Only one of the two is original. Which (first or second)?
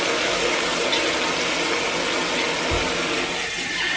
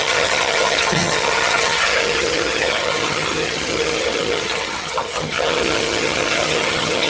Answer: first